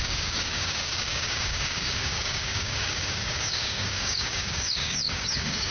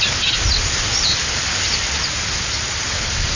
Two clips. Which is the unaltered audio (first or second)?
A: second